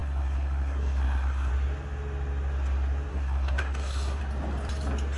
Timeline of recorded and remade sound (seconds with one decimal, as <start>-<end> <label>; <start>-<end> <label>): 0.0-1.5 remade; 1.5-3.1 recorded; 3.1-4.2 remade; 4.2-5.2 recorded